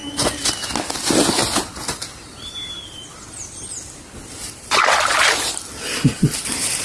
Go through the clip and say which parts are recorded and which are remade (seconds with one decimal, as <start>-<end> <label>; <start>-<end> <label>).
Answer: 0.0-6.8 recorded